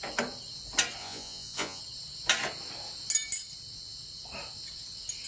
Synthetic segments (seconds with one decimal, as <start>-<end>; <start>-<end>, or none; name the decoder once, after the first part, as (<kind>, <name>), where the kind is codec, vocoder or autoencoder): 1.0-1.8 (vocoder, Vocos)